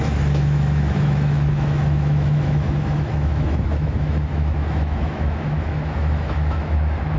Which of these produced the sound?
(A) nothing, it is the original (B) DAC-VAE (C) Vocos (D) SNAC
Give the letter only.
B